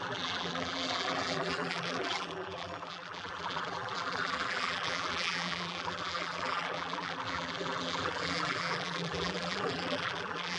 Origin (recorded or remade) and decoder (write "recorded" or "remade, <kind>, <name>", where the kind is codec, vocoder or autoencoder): remade, vocoder, BigVGAN v2